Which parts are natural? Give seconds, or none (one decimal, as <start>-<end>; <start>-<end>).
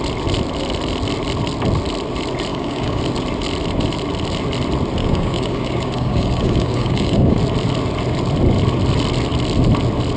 0.0-2.5; 3.0-5.0; 7.4-10.2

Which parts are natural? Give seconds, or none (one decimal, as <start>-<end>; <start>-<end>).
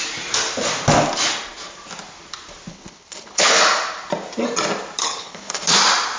0.0-2.7; 3.6-5.0; 5.8-6.2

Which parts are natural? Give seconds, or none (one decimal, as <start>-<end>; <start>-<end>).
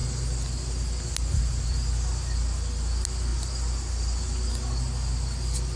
0.0-5.8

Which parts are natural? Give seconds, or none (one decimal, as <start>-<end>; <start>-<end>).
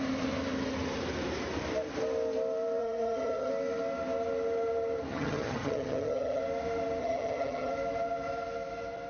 0.0-2.8; 3.5-5.1; 6.4-7.0; 7.7-9.1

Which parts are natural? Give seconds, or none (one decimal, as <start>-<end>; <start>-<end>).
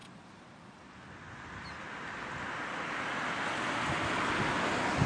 3.1-5.1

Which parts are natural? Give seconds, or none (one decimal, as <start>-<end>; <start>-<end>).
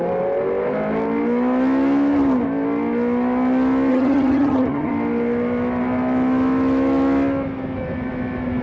0.0-3.9; 4.9-8.6